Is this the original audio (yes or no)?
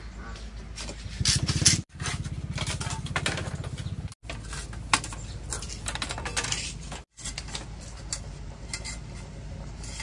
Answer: yes